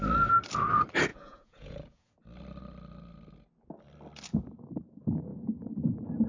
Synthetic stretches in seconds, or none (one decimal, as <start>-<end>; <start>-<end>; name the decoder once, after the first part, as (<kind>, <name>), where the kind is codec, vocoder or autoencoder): 1.1-2.1 (vocoder, Vocos); 5.3-6.3